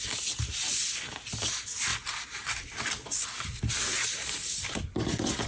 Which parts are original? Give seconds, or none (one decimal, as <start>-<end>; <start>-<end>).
0.0-5.5